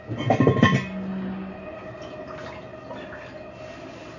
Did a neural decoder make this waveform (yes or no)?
no